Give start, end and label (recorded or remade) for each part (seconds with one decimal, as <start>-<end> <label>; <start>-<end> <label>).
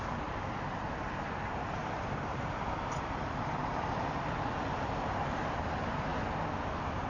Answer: 0.0-6.1 remade; 6.1-7.1 recorded